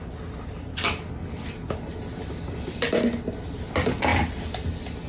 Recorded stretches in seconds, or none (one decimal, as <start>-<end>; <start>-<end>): 0.0-5.1